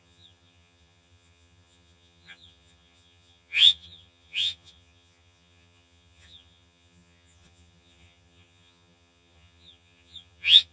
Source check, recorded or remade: remade